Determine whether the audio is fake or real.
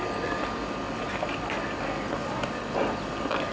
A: real